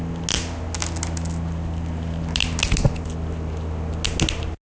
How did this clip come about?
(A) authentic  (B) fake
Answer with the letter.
A